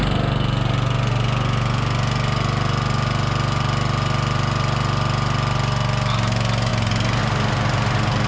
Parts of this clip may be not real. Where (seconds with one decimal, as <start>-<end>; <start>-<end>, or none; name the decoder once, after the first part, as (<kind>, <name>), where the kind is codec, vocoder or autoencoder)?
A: none